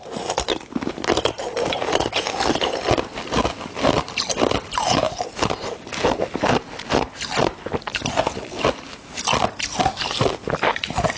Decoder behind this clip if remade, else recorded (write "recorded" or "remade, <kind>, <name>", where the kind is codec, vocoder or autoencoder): recorded